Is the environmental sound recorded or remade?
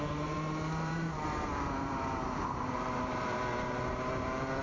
remade